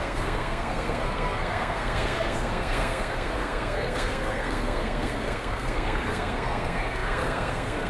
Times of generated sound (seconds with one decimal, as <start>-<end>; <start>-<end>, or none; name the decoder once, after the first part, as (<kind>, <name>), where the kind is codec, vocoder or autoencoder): 0.0-7.9 (codec, SNAC)